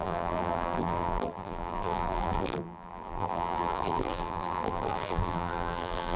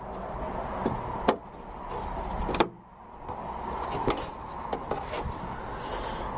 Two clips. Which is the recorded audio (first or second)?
second